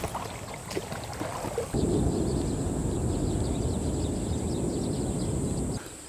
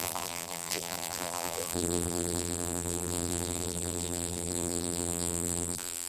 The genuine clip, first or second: first